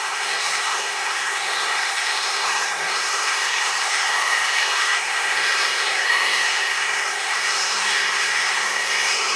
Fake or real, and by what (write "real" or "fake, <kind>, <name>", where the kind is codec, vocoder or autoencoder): fake, codec, SNAC